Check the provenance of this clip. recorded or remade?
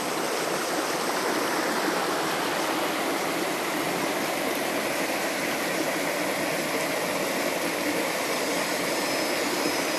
recorded